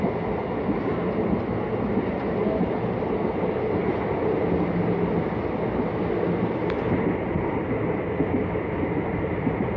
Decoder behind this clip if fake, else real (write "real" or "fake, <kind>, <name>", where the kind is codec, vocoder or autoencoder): real